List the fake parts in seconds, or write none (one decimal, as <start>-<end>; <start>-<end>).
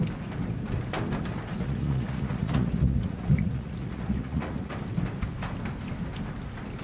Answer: 1.5-4.7